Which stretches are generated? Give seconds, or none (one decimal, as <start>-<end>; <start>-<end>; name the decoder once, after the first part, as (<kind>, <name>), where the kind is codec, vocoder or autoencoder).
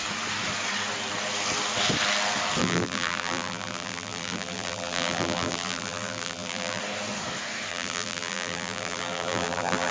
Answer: 2.6-6.8 (vocoder, BigVGAN v2); 7.7-9.9